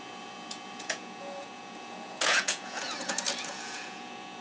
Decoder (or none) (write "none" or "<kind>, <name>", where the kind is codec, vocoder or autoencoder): vocoder, Vocos